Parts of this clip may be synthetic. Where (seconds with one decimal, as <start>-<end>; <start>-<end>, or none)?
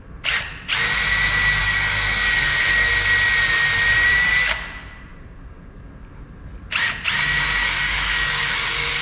1.6-2.9; 7.6-9.0